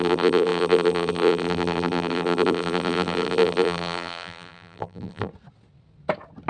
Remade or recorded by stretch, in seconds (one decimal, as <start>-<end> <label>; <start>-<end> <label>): 0.0-5.3 remade; 5.3-6.5 recorded